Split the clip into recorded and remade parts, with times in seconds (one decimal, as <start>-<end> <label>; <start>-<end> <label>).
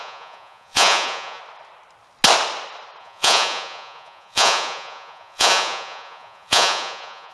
0.0-1.4 remade; 1.4-3.0 recorded; 3.0-7.3 remade